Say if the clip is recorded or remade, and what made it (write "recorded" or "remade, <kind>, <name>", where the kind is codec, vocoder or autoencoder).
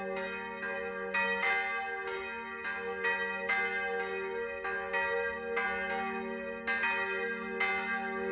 recorded